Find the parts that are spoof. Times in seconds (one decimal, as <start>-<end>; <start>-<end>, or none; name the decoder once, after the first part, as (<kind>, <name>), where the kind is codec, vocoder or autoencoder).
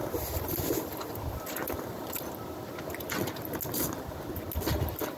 none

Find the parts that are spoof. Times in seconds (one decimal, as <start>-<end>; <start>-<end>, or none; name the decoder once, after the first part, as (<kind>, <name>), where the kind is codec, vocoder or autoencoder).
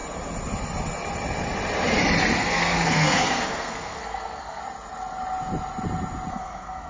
2.4-4.6 (codec, SNAC); 6.3-6.9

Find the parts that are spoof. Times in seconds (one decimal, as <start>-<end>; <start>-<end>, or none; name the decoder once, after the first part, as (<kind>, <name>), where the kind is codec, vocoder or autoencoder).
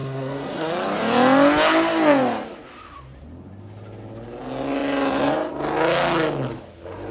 0.0-0.7 (codec, SNAC)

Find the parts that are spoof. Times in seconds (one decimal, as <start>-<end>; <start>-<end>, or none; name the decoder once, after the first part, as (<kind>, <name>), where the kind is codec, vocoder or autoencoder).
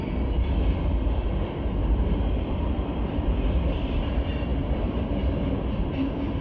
0.0-4.5 (vocoder, BigVGAN v2); 5.6-6.4